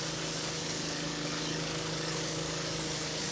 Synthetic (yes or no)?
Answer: yes